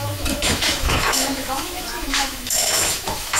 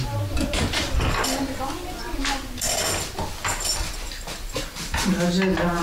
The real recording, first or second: second